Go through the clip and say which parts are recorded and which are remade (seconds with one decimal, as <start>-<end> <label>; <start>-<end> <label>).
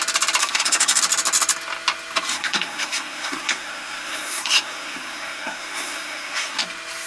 0.0-0.4 recorded; 0.4-1.0 remade; 1.0-2.3 recorded; 2.3-6.6 remade; 6.6-7.1 recorded